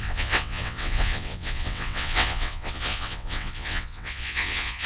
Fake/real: fake